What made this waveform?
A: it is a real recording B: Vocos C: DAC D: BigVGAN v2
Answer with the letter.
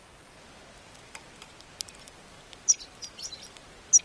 A